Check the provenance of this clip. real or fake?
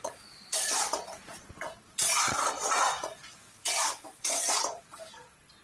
fake